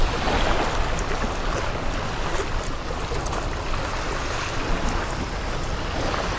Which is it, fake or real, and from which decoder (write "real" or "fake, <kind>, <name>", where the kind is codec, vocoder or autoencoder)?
real